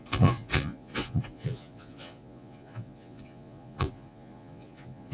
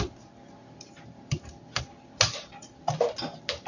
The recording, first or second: second